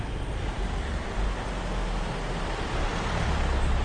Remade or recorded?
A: recorded